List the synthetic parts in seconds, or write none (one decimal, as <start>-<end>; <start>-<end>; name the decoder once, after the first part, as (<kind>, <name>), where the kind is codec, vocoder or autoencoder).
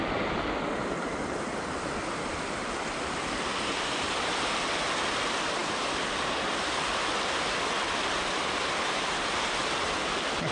none